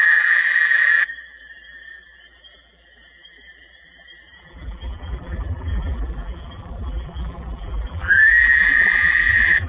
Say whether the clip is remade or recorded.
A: remade